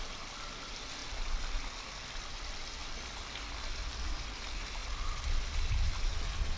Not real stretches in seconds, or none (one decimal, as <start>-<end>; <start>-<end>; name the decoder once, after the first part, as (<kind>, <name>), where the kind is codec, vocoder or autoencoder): none